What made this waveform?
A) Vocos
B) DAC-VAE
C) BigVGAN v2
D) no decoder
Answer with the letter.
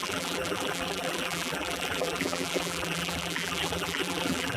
C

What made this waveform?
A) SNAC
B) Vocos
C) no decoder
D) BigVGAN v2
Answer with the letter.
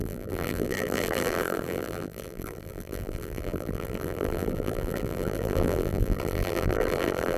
D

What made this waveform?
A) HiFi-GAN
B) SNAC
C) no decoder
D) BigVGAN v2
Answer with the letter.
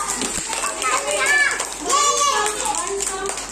C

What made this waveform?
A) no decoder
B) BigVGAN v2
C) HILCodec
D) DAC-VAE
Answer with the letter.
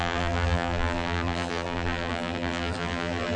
B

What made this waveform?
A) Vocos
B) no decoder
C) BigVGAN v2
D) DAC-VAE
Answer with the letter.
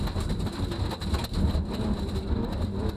B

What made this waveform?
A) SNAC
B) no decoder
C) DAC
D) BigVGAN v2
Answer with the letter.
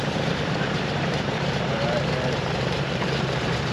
D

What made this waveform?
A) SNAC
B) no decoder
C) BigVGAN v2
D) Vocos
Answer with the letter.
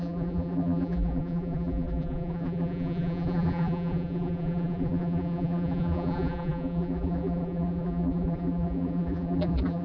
C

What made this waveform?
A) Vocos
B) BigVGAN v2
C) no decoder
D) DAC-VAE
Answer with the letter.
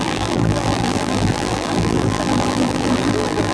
B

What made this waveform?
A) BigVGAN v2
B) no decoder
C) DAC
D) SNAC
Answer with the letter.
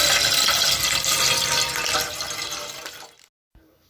B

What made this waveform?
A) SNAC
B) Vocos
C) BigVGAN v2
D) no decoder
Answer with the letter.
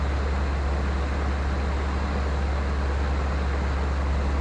D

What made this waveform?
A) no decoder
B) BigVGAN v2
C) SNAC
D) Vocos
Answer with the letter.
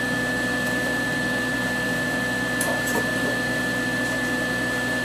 A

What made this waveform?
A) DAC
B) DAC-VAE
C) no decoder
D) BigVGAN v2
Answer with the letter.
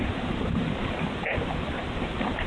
D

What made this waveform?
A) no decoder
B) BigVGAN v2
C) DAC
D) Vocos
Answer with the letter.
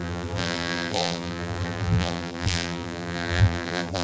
B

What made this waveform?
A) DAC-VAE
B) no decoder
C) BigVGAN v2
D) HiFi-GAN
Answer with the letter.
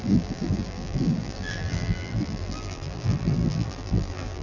C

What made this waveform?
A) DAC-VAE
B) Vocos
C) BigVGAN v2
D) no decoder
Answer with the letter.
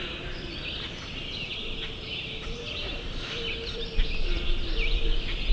C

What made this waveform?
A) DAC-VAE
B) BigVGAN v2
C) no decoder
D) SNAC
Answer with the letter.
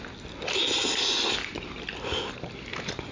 C